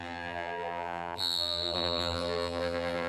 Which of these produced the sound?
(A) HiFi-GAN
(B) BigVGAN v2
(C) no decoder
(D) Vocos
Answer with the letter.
B